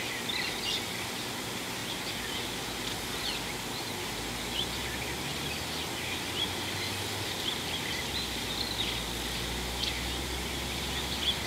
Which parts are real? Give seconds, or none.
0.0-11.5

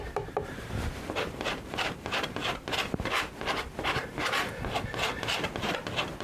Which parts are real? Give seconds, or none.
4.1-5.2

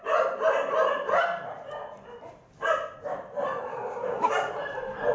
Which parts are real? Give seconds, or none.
0.0-3.7; 4.3-5.1

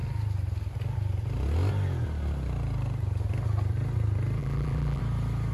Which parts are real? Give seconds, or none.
0.0-4.4; 5.0-5.5

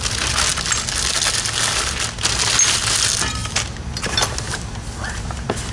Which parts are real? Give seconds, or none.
0.0-3.4; 5.1-5.7